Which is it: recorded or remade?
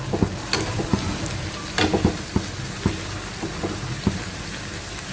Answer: recorded